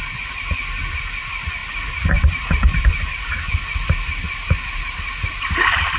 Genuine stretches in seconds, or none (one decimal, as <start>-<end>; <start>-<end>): 0.0-6.0